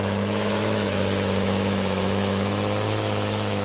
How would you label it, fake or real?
fake